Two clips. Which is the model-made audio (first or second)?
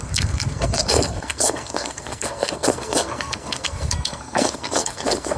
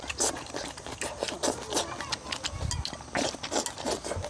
first